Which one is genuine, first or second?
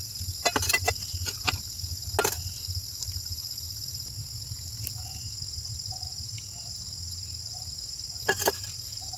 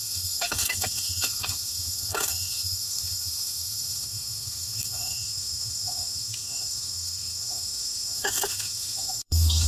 first